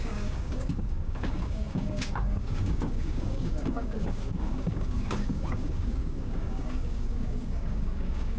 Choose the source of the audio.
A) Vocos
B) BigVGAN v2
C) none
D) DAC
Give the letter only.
D